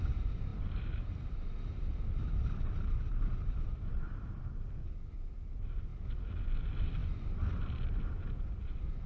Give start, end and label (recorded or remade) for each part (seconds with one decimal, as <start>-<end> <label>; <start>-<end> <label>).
0.0-0.5 recorded; 0.5-4.4 remade; 4.4-9.1 recorded